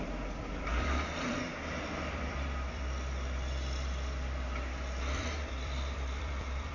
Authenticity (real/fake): fake